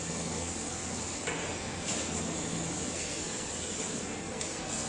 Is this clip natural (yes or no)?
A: no